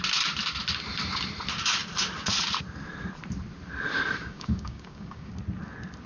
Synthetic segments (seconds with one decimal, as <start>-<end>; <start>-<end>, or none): 4.2-5.3